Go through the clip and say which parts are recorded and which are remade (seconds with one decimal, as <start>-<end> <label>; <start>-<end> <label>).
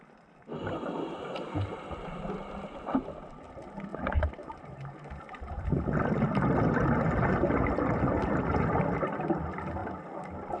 0.0-3.9 recorded; 3.9-5.7 remade; 5.7-10.6 recorded